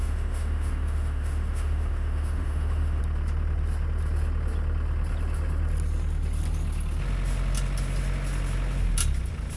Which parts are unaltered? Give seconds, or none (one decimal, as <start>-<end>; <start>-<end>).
3.0-9.6